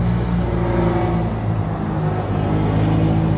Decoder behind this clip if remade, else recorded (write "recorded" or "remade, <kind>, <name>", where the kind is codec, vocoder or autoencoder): recorded